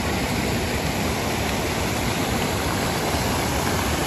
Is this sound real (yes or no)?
no